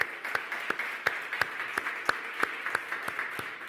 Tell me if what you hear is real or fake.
real